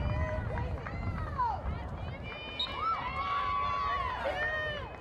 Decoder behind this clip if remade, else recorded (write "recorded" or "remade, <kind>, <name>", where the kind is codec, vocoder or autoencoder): recorded